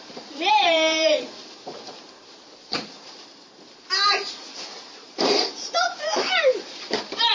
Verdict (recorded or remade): remade